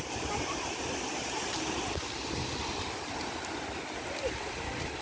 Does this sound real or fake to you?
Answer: real